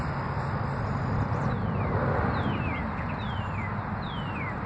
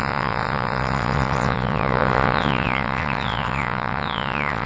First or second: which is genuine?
first